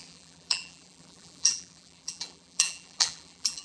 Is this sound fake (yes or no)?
yes